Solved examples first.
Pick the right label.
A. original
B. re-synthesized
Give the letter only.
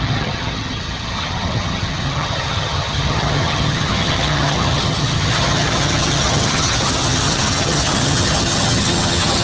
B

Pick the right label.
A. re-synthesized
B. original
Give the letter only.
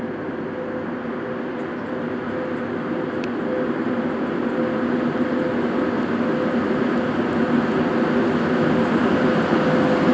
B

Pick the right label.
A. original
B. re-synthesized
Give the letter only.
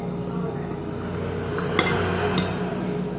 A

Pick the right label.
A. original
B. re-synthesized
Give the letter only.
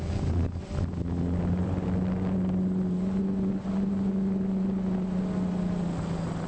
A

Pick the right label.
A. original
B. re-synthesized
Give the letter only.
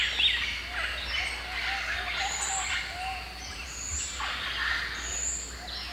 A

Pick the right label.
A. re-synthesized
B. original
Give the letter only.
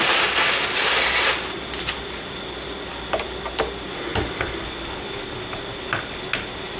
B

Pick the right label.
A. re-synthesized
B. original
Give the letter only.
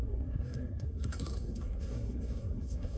A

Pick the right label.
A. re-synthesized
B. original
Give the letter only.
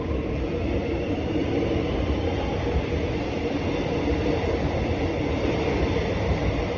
B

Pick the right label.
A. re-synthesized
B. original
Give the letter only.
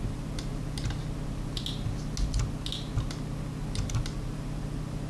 B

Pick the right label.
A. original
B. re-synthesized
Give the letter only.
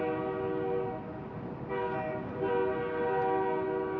A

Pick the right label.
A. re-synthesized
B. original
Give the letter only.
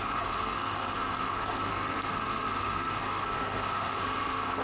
A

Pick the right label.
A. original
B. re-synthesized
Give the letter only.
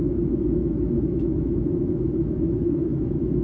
B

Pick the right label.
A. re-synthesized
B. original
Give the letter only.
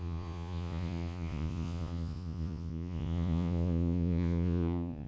A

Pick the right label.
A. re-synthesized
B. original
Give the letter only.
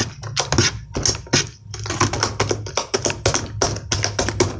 B